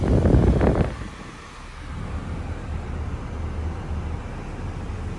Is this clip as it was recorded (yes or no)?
yes